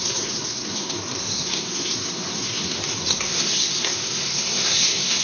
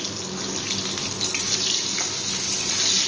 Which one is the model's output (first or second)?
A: first